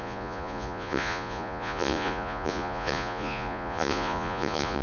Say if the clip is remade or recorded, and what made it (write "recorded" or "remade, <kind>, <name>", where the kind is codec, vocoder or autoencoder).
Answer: remade, vocoder, Vocos